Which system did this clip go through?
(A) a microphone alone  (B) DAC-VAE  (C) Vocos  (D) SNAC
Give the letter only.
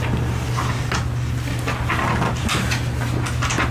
A